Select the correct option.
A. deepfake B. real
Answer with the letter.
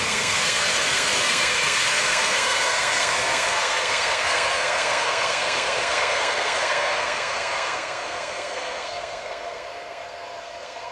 A